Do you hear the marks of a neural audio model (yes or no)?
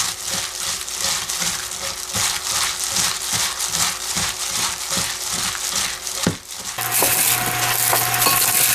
no